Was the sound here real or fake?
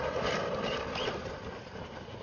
real